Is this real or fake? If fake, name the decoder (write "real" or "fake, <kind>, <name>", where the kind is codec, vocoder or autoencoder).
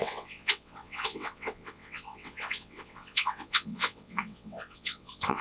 fake, vocoder, WaveNeXt